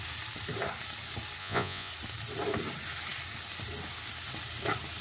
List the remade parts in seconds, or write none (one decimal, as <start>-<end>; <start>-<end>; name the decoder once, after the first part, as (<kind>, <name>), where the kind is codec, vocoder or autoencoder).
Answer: 1.4-1.9 (vocoder, Vocos)